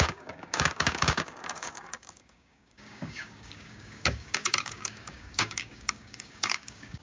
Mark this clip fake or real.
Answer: fake